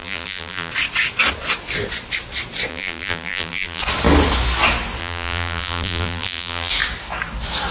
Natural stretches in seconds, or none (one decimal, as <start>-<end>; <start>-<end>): 0.7-2.7; 3.8-5.0; 6.7-7.7